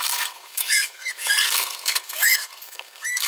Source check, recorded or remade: remade